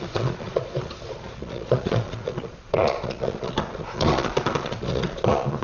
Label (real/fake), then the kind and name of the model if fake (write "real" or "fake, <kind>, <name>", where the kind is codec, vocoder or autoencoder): fake, vocoder, Vocos